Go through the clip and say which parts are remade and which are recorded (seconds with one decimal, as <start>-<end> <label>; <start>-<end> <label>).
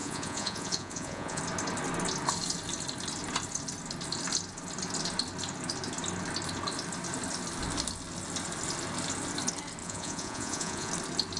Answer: 0.0-1.4 remade; 1.4-9.8 recorded; 9.8-10.9 remade; 10.9-11.4 recorded